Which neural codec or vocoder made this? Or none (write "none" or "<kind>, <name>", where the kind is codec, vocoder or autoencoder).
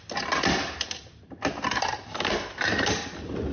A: none